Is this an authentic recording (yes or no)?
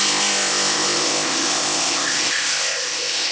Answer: no